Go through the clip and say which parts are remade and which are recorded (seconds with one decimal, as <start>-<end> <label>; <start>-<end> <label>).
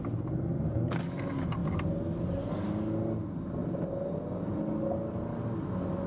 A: 0.0-6.1 recorded